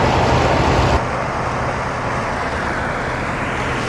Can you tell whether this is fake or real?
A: real